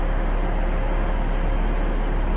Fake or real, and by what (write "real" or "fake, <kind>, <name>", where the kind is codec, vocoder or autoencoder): real